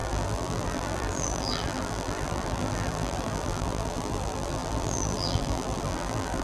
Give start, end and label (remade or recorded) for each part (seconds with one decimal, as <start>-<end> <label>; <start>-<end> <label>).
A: 0.0-6.4 remade